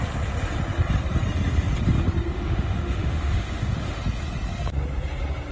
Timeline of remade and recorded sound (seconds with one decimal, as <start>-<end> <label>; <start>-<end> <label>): 0.0-2.3 recorded; 2.3-4.0 remade; 4.0-5.5 recorded